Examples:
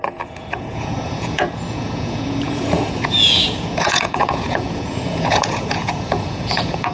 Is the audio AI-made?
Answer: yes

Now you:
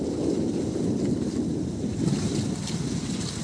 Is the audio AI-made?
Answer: no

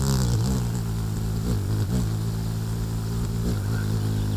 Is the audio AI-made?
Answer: no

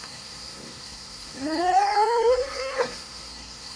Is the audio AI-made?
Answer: yes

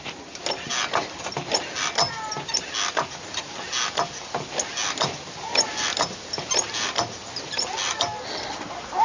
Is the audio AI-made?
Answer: no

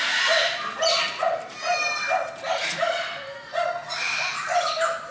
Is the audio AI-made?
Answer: no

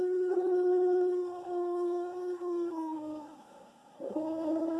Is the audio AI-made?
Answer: yes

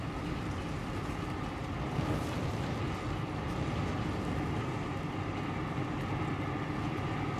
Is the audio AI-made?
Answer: no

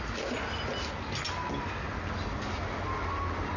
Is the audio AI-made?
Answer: no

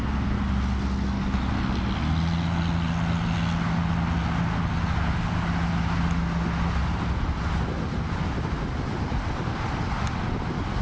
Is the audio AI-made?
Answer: no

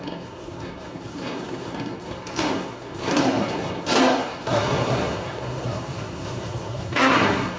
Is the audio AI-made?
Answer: yes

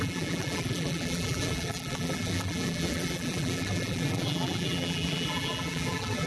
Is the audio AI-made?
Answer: yes